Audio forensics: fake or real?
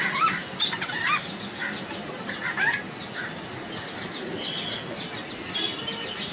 real